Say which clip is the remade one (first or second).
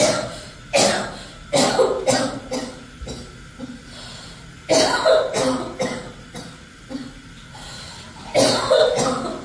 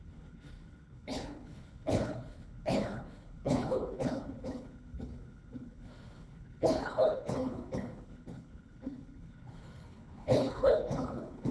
second